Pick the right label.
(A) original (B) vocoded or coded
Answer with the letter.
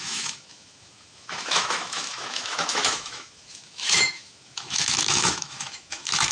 B